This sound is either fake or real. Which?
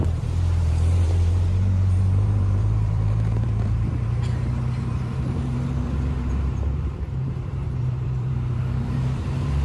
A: fake